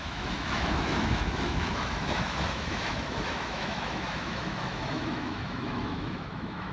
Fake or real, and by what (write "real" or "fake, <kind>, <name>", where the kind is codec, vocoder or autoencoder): fake, autoencoder, DAC-VAE